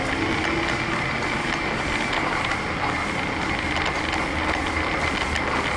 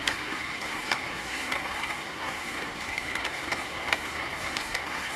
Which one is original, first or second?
first